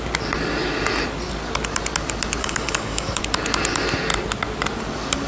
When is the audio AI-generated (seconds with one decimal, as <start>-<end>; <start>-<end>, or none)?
2.4-3.2